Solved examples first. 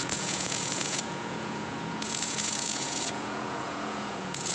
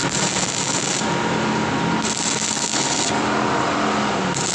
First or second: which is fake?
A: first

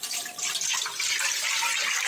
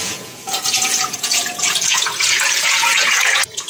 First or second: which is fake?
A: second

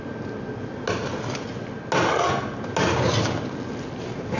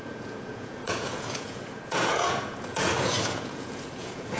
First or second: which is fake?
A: second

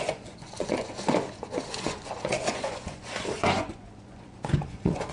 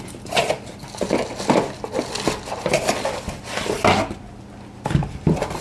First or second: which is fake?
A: first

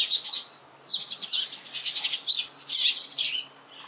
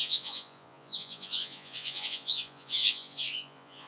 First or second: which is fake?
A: second